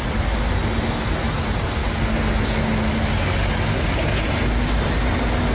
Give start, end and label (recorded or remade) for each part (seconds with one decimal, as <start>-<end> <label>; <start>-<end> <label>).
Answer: 0.0-5.5 recorded

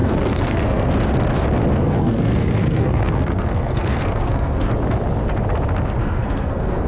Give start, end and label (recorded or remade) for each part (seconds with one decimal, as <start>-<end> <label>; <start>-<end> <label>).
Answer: 0.0-0.9 remade; 0.9-1.7 recorded; 1.7-4.7 remade; 4.7-6.0 recorded; 6.0-6.9 remade

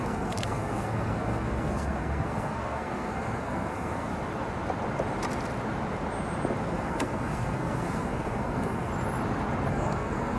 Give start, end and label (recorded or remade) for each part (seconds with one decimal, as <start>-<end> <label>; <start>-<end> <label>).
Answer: 0.0-4.1 remade; 4.1-6.6 recorded; 6.6-8.9 remade; 8.9-9.7 recorded; 9.7-10.4 remade

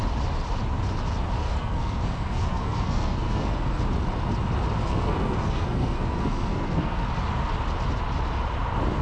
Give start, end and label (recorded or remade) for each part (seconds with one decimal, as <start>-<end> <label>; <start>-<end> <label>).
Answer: 0.0-1.4 recorded; 1.4-3.8 remade; 3.8-4.8 recorded; 4.8-7.1 remade; 7.1-9.0 recorded

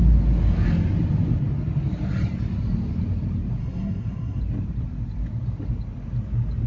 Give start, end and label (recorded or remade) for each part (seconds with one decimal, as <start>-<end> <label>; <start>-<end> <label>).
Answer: 0.0-3.6 recorded; 3.6-4.4 remade; 4.4-6.7 recorded

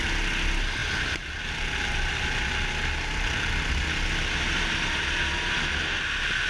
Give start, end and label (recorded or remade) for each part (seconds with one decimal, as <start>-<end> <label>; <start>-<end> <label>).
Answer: 0.0-6.5 recorded

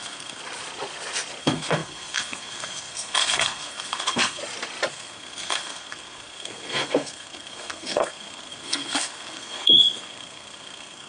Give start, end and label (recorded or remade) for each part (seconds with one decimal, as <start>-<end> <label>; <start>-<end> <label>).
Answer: 0.0-0.4 remade; 0.4-1.4 recorded; 1.4-4.4 remade; 4.4-4.9 recorded; 4.9-11.1 remade